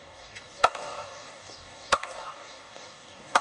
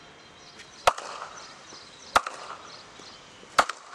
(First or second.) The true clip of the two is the second